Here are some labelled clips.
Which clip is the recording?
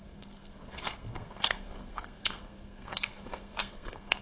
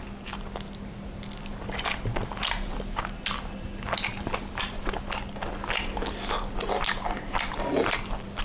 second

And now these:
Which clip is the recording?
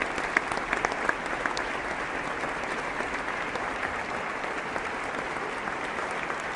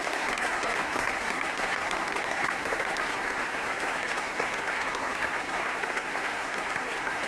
first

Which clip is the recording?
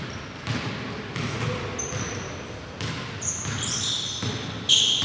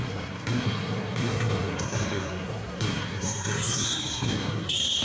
first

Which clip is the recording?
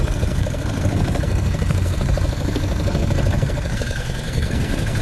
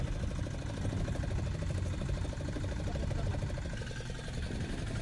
second